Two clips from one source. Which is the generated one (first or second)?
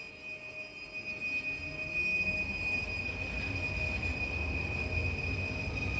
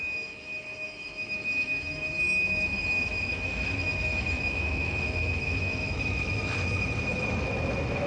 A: second